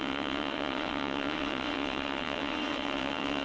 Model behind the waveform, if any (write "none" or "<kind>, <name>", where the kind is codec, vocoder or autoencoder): vocoder, WaveNeXt